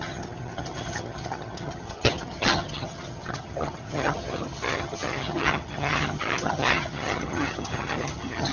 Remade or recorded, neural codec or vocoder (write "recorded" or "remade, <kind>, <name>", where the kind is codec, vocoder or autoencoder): remade, vocoder, HiFi-GAN